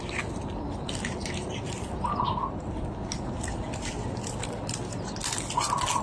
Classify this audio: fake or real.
real